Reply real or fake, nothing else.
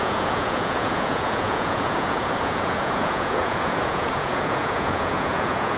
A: fake